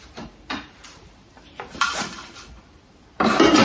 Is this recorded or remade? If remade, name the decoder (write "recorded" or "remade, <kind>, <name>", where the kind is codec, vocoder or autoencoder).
remade, vocoder, BigVGAN v2